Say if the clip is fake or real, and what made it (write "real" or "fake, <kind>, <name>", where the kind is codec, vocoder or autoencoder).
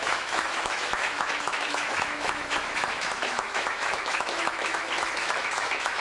fake, autoencoder, DAC-VAE